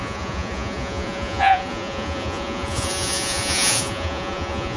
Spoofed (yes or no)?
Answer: yes